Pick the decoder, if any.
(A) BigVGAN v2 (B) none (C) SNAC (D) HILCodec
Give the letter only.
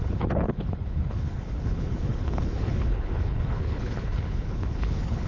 D